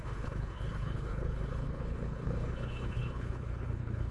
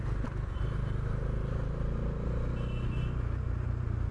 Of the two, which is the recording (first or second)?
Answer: second